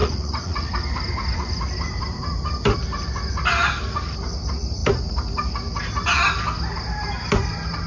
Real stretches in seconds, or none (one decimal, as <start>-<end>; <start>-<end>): 0.7-7.9